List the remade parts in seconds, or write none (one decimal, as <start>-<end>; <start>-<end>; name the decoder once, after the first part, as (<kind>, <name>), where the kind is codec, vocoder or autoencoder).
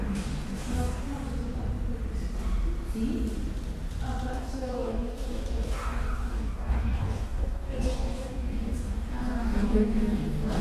0.0-1.1 (codec, DAC); 4.3-10.6